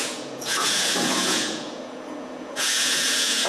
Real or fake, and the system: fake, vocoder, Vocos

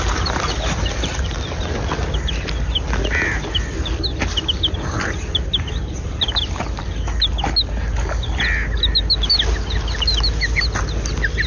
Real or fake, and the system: real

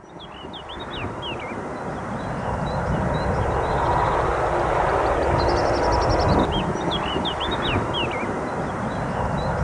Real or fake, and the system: real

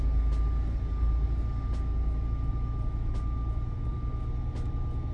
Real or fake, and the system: real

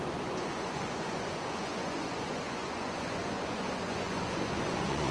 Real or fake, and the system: fake, vocoder, Vocos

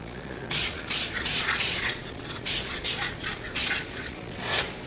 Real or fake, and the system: fake, vocoder, Vocos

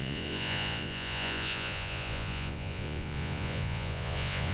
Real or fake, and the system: fake, vocoder, Vocos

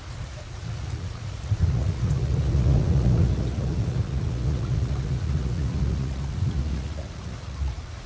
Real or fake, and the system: fake, vocoder, Vocos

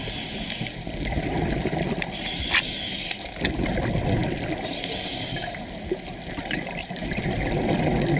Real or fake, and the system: real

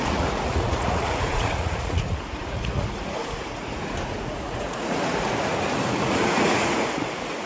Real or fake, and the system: fake, vocoder, Vocos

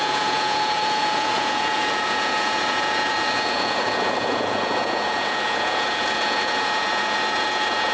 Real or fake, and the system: fake, vocoder, Vocos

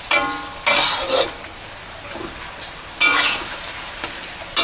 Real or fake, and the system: real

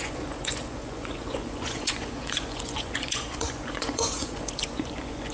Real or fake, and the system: fake, vocoder, Vocos